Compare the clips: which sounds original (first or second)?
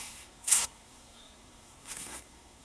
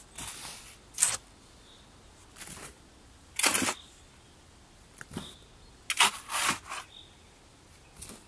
second